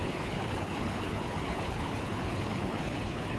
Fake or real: fake